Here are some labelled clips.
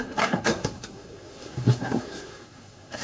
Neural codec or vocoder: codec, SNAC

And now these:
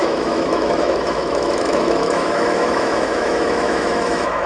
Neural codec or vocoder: autoencoder, DAC-VAE